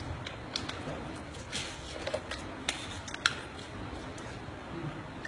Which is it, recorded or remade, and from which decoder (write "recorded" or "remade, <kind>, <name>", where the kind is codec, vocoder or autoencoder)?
recorded